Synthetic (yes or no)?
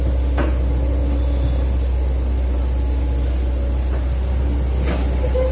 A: no